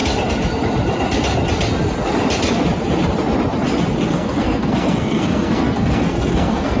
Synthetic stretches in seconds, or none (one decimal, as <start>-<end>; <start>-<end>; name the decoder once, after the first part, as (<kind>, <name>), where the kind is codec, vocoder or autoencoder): 4.1-6.8 (codec, SNAC)